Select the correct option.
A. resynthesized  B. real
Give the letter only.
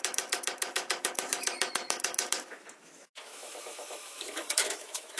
A